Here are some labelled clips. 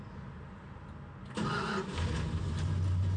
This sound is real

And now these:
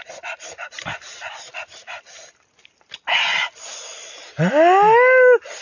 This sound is real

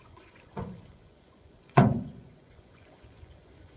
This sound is fake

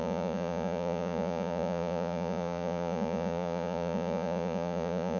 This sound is fake